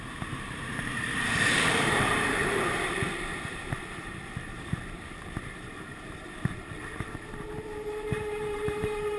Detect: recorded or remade remade